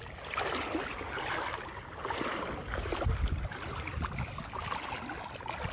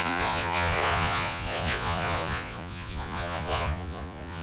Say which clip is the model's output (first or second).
second